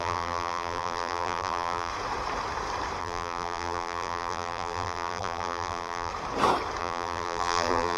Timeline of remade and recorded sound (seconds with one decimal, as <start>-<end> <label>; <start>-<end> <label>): 0.0-1.9 remade; 1.9-3.0 recorded; 3.0-6.1 remade; 6.1-6.8 recorded; 6.8-8.0 remade